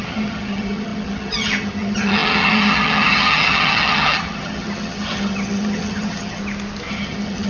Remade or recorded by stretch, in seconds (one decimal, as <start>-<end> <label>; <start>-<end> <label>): 0.0-6.4 remade; 6.4-6.9 recorded; 6.9-7.5 remade